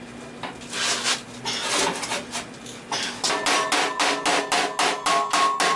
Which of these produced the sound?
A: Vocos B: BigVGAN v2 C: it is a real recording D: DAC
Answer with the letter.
C